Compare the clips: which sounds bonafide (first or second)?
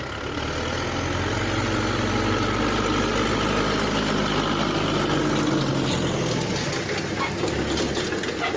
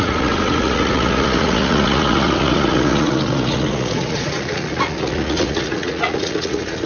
first